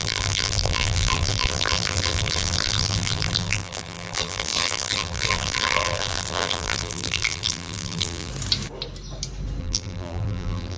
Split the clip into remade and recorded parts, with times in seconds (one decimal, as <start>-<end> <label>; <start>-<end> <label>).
0.0-8.3 remade; 8.3-9.6 recorded; 9.6-10.8 remade